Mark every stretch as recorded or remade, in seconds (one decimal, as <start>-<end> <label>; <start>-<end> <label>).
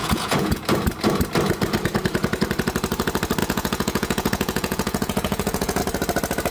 0.0-0.6 remade; 0.6-3.4 recorded; 3.4-5.8 remade; 5.8-6.5 recorded